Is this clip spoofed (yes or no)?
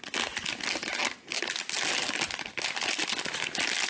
no